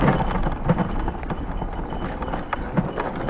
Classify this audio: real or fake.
real